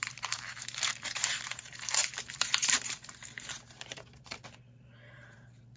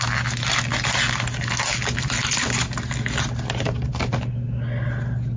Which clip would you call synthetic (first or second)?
first